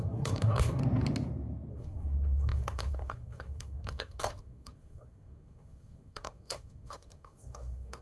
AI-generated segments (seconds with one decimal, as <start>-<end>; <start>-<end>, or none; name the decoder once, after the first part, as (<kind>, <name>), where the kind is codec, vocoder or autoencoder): 0.0-0.8 (codec, SNAC); 1.7-8.0